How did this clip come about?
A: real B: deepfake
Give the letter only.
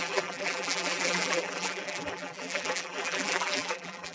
B